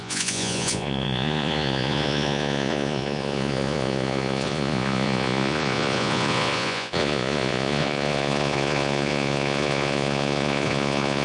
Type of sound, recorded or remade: remade